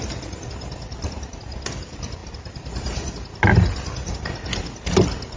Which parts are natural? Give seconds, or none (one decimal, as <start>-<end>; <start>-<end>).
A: 0.0-5.4